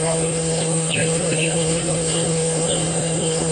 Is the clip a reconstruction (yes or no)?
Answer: yes